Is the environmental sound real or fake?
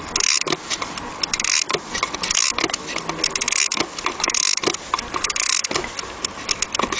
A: real